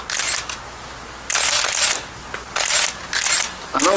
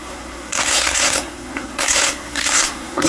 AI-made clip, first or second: second